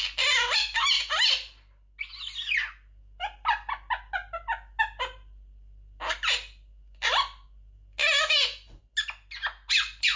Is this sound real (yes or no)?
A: yes